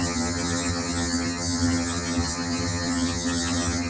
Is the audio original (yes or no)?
no